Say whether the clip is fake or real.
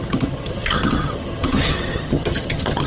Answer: fake